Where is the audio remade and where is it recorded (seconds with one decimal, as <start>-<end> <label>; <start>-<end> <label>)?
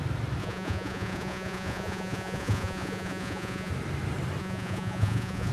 0.0-0.4 recorded; 0.4-3.7 remade; 3.7-4.4 recorded; 4.4-5.5 remade